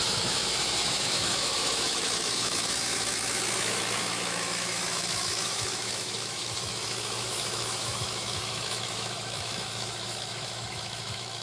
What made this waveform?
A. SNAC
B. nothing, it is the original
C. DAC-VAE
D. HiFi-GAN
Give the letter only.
C